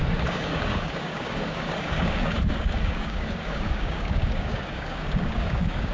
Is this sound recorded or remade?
remade